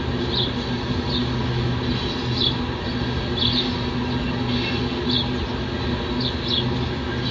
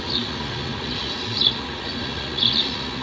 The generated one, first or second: second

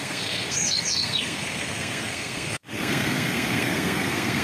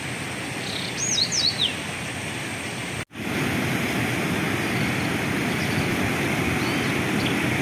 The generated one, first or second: first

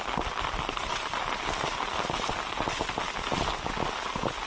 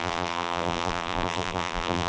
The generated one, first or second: second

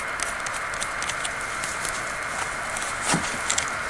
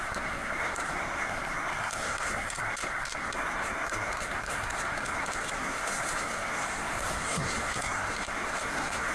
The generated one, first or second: second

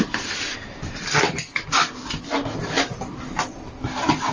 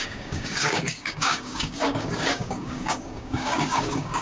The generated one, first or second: second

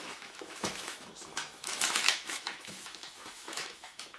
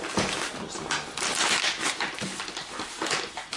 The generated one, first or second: first